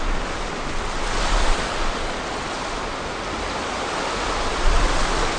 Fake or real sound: real